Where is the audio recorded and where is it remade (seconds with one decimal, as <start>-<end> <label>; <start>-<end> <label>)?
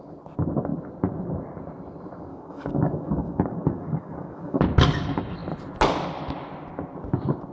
0.0-2.3 recorded; 2.3-4.6 remade; 4.6-7.5 recorded